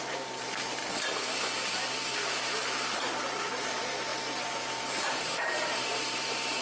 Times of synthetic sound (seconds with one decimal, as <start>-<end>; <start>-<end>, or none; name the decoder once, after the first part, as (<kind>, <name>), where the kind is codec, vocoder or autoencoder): 0.0-0.8 (vocoder, BigVGAN v2); 1.9-6.6